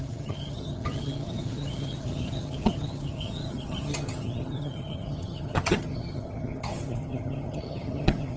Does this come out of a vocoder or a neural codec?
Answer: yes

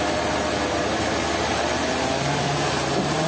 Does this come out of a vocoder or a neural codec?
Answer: no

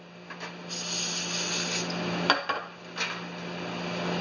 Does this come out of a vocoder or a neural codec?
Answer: no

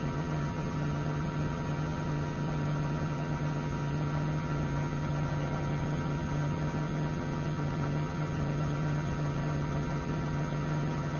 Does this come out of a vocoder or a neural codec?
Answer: yes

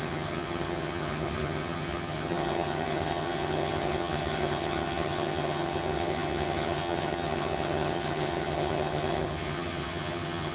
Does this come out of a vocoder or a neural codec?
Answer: yes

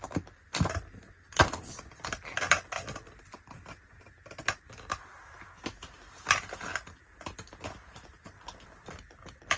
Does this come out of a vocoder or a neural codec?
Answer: no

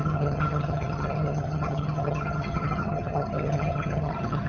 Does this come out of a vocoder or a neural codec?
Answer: yes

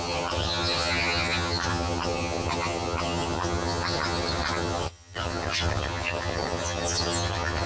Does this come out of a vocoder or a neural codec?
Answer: yes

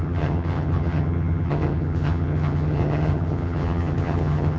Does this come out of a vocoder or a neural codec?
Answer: yes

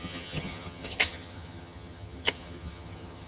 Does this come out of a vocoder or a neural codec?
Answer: yes